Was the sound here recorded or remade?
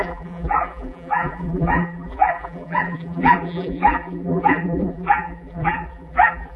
remade